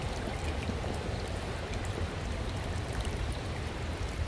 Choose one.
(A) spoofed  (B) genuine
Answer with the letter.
A